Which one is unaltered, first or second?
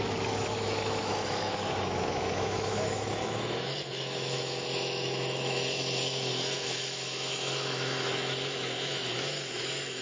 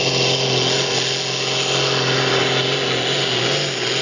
second